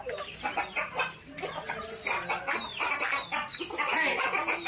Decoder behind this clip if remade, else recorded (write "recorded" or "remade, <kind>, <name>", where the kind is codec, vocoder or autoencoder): recorded